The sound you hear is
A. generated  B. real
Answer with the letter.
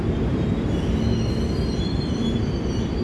A